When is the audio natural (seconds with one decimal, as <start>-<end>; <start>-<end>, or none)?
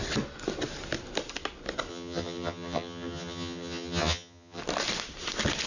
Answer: 0.0-1.9; 4.6-5.7